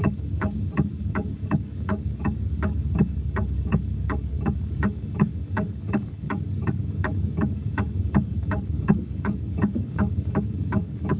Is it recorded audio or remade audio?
remade